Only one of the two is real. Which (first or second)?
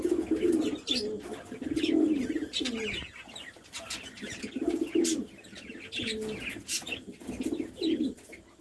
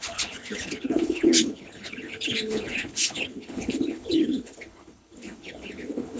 first